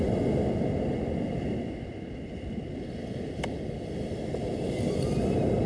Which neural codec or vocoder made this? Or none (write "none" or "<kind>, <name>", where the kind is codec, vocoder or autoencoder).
none